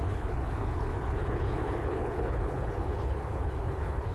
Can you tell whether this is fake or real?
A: fake